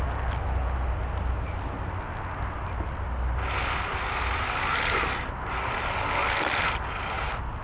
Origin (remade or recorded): recorded